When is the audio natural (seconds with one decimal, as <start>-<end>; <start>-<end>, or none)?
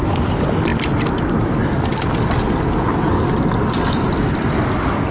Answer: 0.0-5.1